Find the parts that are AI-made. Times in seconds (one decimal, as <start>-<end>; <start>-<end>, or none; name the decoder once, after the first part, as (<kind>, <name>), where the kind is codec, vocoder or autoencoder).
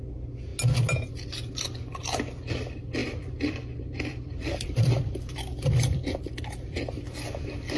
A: 3.0-7.0 (vocoder, BigVGAN v2)